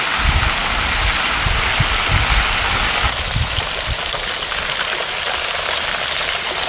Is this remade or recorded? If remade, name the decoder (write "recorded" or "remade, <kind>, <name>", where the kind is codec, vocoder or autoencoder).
recorded